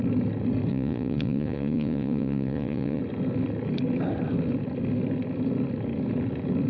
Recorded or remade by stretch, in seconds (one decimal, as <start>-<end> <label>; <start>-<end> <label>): 0.0-0.7 recorded; 0.7-3.0 remade; 3.0-6.7 recorded